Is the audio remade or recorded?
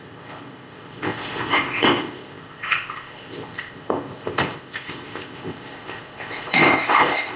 remade